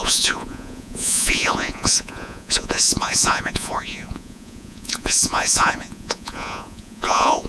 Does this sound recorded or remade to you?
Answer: remade